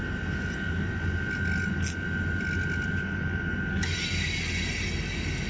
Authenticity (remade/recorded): recorded